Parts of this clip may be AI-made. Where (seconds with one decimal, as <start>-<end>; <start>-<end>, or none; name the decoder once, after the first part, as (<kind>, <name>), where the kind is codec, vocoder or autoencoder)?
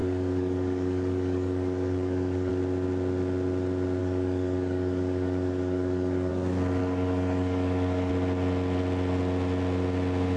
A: 0.0-2.5 (codec, DAC); 4.0-6.3; 6.8-8.1